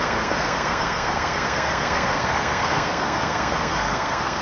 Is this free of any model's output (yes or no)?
no